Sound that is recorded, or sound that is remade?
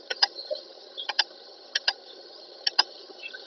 remade